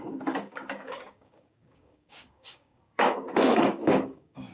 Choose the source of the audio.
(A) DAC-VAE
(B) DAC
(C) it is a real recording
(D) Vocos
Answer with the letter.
B